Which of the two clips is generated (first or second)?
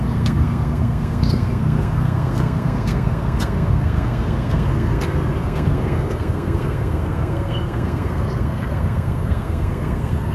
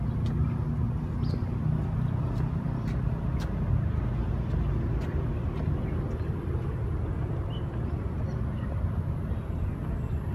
first